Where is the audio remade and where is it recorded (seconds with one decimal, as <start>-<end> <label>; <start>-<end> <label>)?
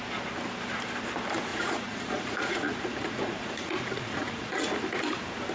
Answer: 0.0-1.5 recorded; 1.5-4.8 remade; 4.8-5.5 recorded